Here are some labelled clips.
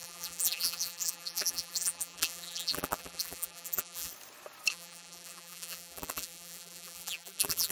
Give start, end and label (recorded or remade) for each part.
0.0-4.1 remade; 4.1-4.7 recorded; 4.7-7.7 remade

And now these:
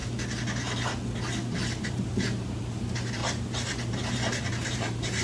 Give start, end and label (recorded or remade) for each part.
0.0-1.8 recorded; 1.8-3.2 remade; 3.2-3.9 recorded; 3.9-5.2 remade

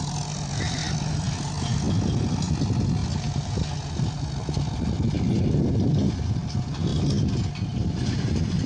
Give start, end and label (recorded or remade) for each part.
0.0-8.7 recorded

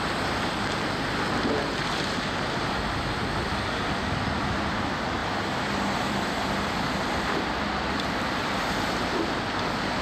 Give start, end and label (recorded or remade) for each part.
0.0-5.2 remade; 5.2-6.0 recorded; 6.0-10.0 remade

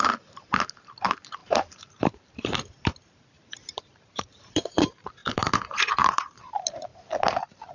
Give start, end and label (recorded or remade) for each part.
0.0-6.9 remade; 6.9-7.7 recorded

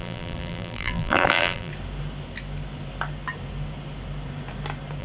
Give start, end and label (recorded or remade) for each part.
0.0-1.7 remade; 1.7-5.0 recorded

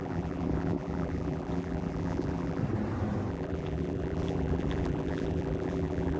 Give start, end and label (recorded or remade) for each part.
0.0-2.6 remade; 2.6-3.3 recorded; 3.3-6.2 remade

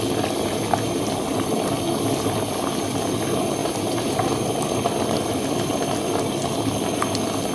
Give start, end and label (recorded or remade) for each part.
0.0-3.6 recorded; 3.6-5.9 remade; 5.9-7.5 recorded